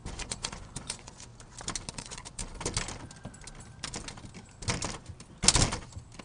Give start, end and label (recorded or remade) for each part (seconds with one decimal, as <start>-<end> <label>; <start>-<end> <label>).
0.0-1.3 remade; 1.3-1.9 recorded; 1.9-2.4 remade; 2.4-6.2 recorded